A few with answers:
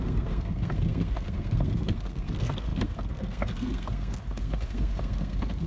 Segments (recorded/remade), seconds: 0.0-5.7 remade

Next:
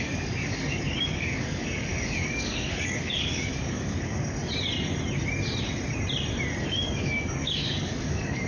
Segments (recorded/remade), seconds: 0.0-4.4 remade; 4.4-6.6 recorded; 6.6-8.5 remade

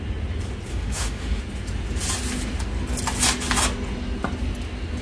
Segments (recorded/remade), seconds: 0.0-0.7 recorded; 0.7-1.4 remade; 1.4-5.0 recorded

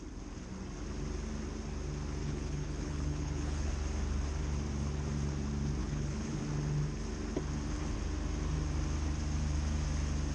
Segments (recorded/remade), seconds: 0.0-2.2 recorded; 2.2-3.7 remade; 3.7-5.8 recorded; 5.8-6.4 remade; 6.4-10.3 recorded

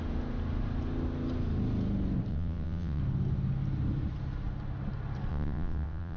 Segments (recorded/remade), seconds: 0.0-2.3 recorded; 2.3-3.0 remade; 3.0-5.3 recorded; 5.3-6.2 remade

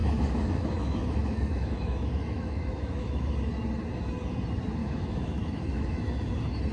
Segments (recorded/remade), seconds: 0.0-3.3 remade; 3.3-4.8 recorded; 4.8-6.3 remade; 6.3-6.7 recorded